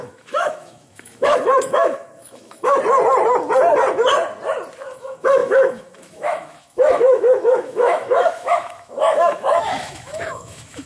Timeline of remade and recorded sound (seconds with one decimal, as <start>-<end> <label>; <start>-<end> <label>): 0.0-2.7 remade; 2.7-4.9 recorded; 4.9-10.9 remade